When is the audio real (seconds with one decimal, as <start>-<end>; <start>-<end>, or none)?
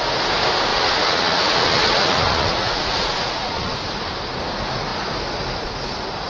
0.0-0.7; 3.8-6.3